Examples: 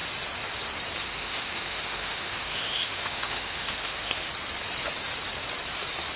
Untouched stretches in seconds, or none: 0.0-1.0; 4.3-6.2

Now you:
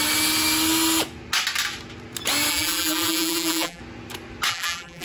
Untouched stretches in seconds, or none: 0.0-2.5; 3.8-4.5